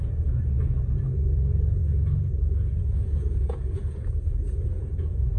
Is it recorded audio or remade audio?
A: remade